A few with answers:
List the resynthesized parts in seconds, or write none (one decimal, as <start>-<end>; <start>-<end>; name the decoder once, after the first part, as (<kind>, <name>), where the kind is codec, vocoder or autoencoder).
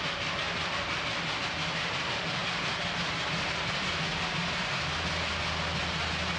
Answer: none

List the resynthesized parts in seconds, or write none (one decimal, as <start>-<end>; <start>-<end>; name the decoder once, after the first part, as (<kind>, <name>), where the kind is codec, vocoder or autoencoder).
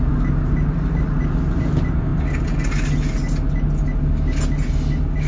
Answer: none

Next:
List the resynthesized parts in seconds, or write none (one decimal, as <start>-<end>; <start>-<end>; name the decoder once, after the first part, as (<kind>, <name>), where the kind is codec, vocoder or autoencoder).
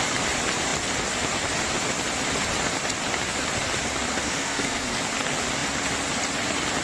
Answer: 4.1-5.0 (codec, SNAC)